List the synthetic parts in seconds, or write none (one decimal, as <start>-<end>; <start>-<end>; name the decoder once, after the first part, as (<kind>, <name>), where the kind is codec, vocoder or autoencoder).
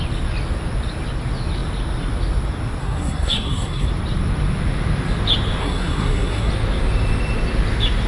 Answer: 2.8-3.9 (codec, SNAC); 5.6-6.5